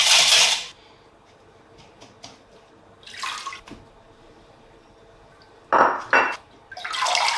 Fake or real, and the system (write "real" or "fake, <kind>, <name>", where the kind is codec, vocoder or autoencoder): real